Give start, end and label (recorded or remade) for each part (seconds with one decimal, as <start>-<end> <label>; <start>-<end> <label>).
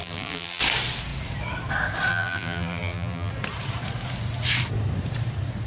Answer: 0.0-0.6 remade; 0.6-2.1 recorded; 2.1-3.3 remade; 3.3-5.7 recorded